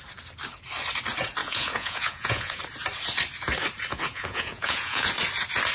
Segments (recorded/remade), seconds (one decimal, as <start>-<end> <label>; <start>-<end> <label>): 0.0-1.4 recorded; 1.4-2.6 remade; 2.6-3.9 recorded; 3.9-5.1 remade; 5.1-5.7 recorded